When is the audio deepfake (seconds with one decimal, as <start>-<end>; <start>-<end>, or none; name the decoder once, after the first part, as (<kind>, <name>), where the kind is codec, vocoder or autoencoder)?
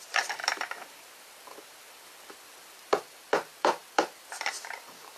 0.0-5.2 (vocoder, BigVGAN v2)